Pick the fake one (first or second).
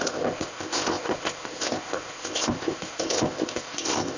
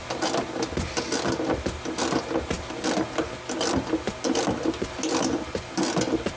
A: first